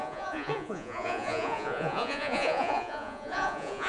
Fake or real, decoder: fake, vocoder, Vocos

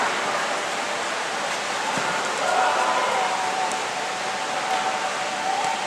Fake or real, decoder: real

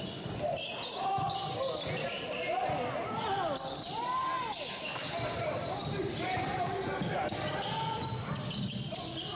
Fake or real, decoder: real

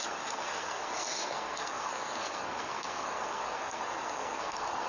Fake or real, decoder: fake, codec, SNAC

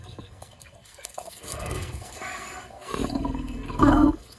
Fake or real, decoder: fake, codec, SNAC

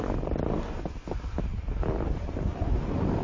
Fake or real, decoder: real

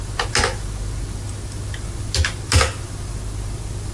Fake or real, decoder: real